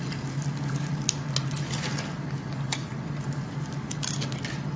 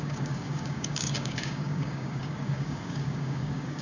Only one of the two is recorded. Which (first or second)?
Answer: first